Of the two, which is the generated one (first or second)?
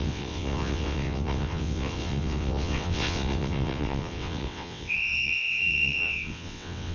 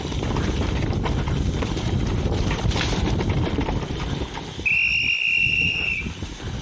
first